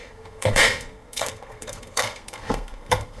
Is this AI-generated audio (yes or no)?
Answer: yes